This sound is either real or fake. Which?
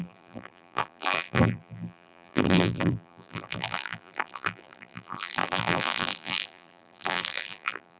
fake